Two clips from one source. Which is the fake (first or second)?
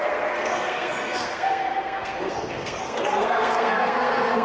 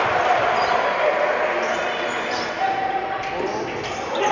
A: first